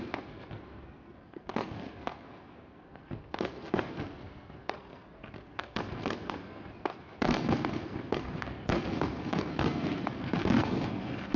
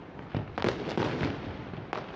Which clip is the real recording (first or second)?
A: second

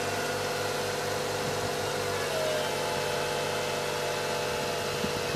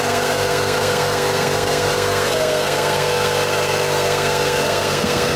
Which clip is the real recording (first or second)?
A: first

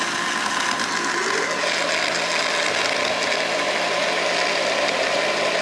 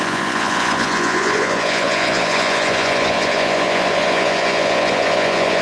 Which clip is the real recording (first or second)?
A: first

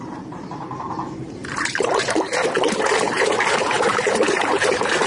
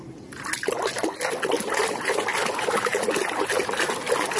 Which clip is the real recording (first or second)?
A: second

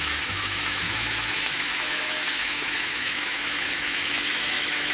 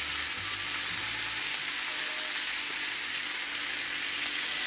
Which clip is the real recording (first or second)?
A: second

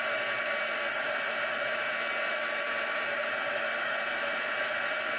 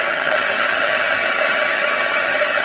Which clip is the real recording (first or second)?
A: first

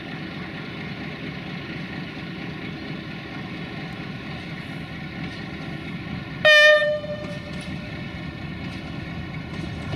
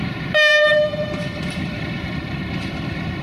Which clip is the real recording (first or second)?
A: first